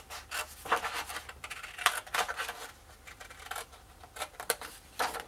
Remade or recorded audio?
recorded